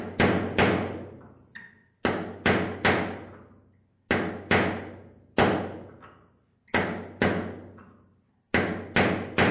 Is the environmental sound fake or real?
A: real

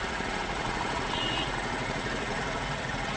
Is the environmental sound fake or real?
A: fake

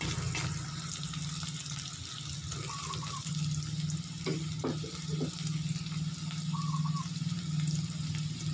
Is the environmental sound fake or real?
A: real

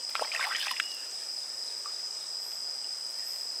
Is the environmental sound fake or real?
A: real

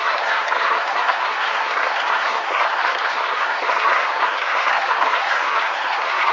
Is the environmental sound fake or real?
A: fake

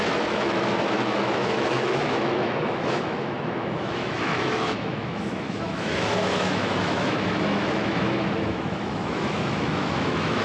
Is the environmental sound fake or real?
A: fake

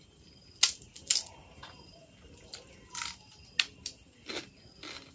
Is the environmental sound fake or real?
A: real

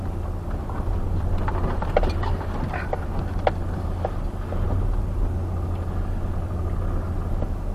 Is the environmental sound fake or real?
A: real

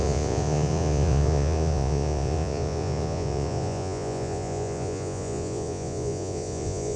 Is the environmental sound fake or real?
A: fake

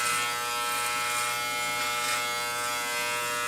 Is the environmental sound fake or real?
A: real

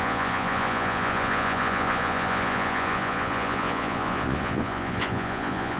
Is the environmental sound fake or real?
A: fake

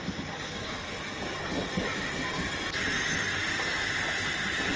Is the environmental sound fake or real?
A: real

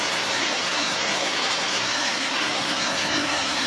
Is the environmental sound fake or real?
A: fake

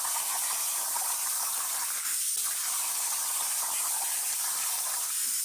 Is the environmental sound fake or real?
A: fake